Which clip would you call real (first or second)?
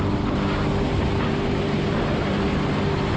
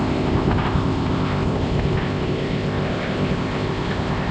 first